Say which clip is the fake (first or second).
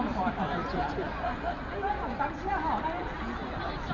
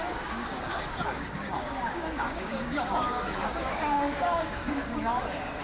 second